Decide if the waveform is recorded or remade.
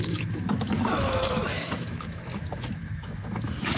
remade